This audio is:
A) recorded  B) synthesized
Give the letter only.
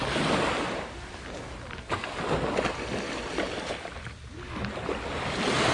A